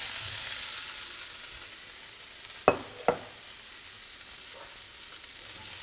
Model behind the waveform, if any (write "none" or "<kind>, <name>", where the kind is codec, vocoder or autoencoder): none